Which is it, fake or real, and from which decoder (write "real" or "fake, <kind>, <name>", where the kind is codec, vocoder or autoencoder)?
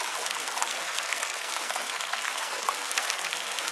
fake, codec, SNAC